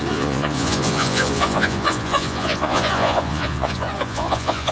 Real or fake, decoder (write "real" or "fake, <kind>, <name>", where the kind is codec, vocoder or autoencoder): fake, vocoder, Vocos